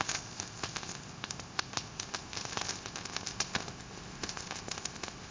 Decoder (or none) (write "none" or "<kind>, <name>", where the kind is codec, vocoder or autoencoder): codec, ZipCodec